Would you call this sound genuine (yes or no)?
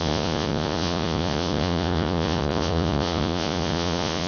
no